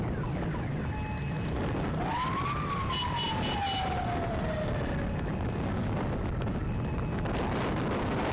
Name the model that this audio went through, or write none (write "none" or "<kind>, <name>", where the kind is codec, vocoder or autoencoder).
none